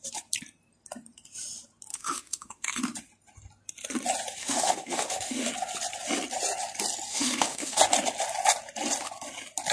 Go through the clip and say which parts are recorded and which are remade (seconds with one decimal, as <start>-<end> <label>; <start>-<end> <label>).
0.0-1.9 recorded; 1.9-2.8 remade; 2.8-4.4 recorded; 4.4-5.5 remade; 5.5-7.1 recorded; 7.1-7.8 remade; 7.8-9.7 recorded